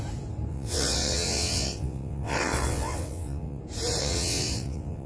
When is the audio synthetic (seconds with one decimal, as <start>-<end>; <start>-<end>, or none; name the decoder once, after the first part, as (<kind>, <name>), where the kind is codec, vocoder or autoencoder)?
0.5-3.6 (vocoder, WaveNeXt); 4.0-5.1